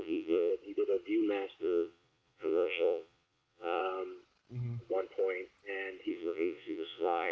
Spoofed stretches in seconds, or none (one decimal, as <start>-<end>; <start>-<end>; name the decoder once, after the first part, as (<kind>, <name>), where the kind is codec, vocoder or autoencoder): 0.0-0.5 (vocoder, Vocos); 1.6-3.8; 6.1-7.3